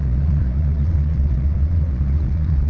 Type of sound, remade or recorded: remade